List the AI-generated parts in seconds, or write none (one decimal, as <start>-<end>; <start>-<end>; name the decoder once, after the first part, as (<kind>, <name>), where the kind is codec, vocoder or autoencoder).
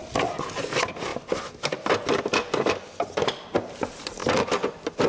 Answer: none